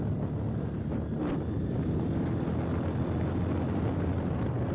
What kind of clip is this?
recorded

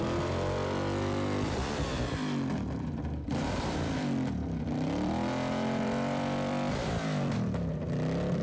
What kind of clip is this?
remade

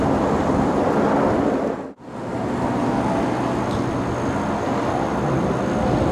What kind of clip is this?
recorded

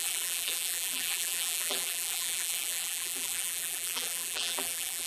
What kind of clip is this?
remade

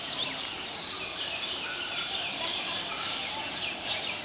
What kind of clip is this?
remade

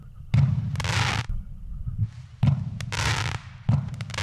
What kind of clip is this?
recorded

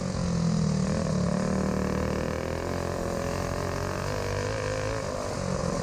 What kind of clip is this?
recorded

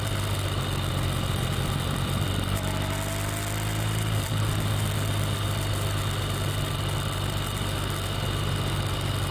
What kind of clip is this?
recorded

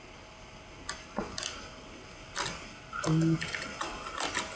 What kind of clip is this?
recorded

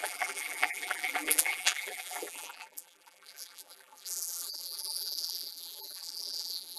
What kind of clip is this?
remade